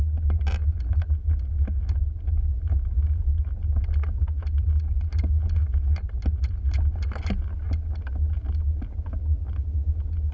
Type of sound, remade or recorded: recorded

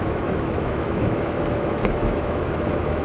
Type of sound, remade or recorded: remade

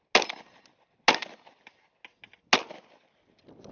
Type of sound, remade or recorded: recorded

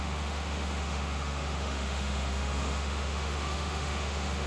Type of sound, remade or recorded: remade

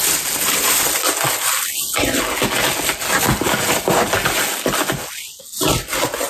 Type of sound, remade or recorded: recorded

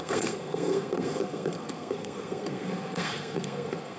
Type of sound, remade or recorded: remade